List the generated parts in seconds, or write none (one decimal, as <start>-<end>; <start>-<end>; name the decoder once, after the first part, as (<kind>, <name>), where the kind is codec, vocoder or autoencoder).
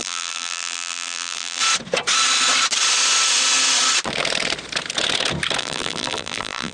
0.0-1.6 (vocoder, BigVGAN v2); 5.6-6.7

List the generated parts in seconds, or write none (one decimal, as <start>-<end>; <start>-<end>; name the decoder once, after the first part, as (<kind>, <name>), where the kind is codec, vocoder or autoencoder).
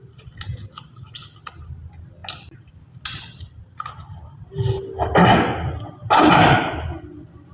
none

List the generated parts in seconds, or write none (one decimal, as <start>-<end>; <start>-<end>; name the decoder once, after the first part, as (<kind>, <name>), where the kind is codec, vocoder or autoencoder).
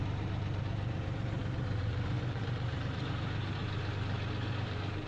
0.6-3.6 (vocoder, BigVGAN v2); 4.5-5.1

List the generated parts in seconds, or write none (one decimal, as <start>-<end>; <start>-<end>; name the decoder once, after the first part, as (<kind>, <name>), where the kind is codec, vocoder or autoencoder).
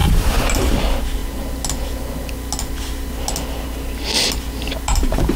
0.0-0.7 (vocoder, BigVGAN v2); 4.9-5.4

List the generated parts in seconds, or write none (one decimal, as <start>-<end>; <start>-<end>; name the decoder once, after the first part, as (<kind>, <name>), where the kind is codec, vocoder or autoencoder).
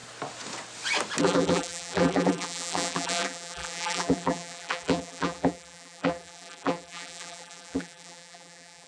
1.2-8.9 (vocoder, BigVGAN v2)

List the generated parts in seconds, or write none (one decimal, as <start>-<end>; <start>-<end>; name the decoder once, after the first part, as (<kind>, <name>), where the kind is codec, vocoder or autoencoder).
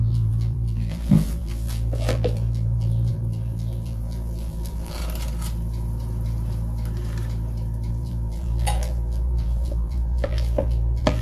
0.0-5.0 (vocoder, BigVGAN v2); 7.9-11.2